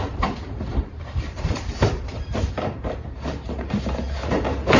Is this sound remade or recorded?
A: remade